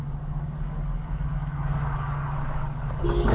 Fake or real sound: fake